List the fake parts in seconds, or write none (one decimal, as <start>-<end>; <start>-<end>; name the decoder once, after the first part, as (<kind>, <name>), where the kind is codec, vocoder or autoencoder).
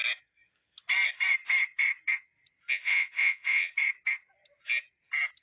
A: 2.7-3.7 (vocoder, Vocos)